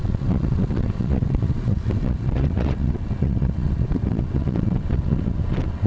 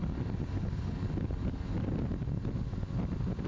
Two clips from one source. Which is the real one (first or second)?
second